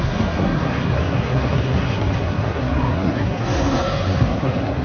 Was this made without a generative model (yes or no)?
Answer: no